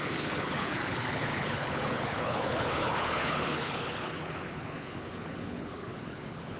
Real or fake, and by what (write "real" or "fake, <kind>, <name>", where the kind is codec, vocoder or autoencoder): fake, codec, HILCodec